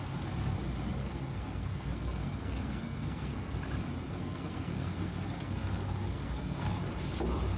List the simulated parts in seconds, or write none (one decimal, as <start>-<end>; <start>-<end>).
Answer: 1.0-3.6; 4.1-6.8